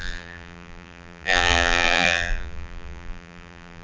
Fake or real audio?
fake